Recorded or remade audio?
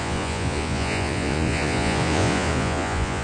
remade